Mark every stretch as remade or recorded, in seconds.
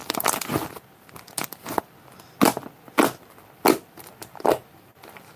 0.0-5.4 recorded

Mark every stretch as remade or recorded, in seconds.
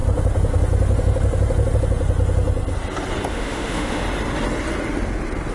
0.0-3.3 recorded; 3.3-4.0 remade; 4.0-5.5 recorded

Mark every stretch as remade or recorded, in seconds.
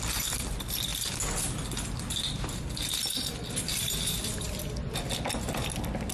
0.0-6.1 recorded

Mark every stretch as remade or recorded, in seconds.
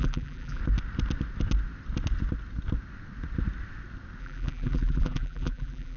0.0-0.6 remade; 0.6-4.2 recorded; 4.2-6.0 remade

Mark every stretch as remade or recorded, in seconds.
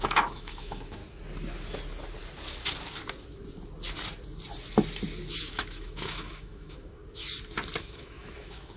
0.0-1.0 remade; 1.0-5.4 recorded; 5.4-7.0 remade; 7.0-7.8 recorded; 7.8-8.8 remade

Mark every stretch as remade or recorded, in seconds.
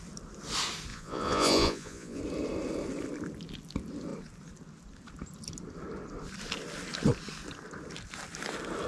0.0-0.9 recorded; 0.9-2.2 remade; 2.2-8.9 recorded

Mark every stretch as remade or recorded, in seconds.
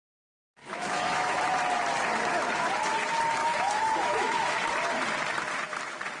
0.0-0.6 recorded; 0.6-1.4 remade; 1.4-3.4 recorded; 3.4-4.5 remade; 4.5-6.2 recorded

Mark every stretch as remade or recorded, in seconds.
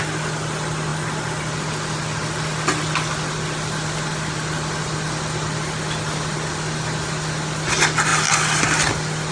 0.0-9.3 recorded